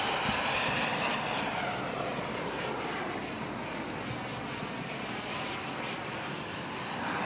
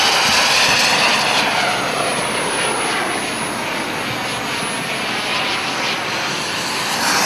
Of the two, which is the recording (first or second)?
second